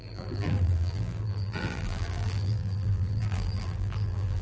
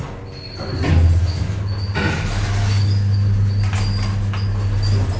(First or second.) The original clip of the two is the second